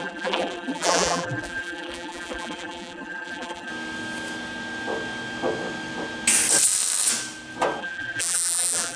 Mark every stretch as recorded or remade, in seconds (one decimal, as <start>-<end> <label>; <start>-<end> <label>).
0.0-3.7 remade; 3.7-7.8 recorded; 7.8-9.0 remade

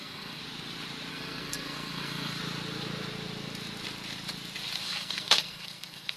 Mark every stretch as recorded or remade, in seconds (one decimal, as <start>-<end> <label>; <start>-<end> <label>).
0.0-0.4 remade; 0.4-1.1 recorded; 1.1-2.4 remade; 2.4-4.8 recorded; 4.8-6.2 remade

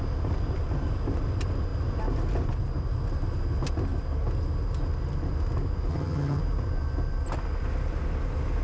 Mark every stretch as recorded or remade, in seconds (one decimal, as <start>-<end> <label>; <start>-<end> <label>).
0.0-5.9 recorded; 5.9-6.4 remade; 6.4-8.6 recorded

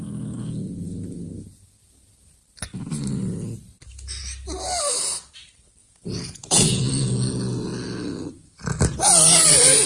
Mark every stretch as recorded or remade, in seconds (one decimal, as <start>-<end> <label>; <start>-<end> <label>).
0.0-5.8 recorded; 5.8-6.8 remade; 6.8-9.9 recorded

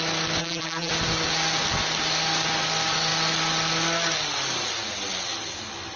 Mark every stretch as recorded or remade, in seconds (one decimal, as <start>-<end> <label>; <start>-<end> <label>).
0.0-0.4 recorded; 0.4-0.9 remade; 0.9-6.0 recorded

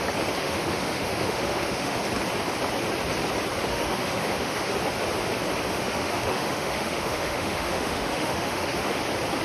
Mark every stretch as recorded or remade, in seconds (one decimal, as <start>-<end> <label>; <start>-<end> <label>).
0.0-0.4 recorded; 0.4-2.0 remade; 2.0-3.6 recorded; 3.6-4.7 remade; 4.7-5.7 recorded; 5.7-9.0 remade; 9.0-9.4 recorded